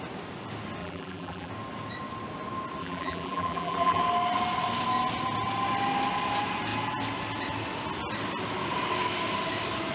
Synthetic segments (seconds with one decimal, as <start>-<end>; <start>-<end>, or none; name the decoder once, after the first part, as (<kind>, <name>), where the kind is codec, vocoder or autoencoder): 0.8-1.5 (vocoder, BigVGAN v2); 2.8-4.0